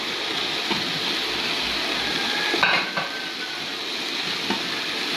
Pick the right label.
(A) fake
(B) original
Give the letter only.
B